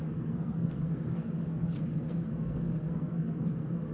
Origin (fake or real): fake